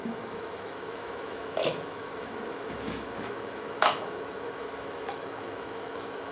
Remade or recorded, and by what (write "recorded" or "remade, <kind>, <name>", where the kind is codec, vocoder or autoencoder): remade, autoencoder, DAC-VAE